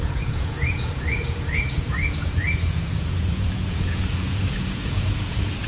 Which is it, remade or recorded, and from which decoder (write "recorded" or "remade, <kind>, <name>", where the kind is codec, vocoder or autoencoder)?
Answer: remade, vocoder, Vocos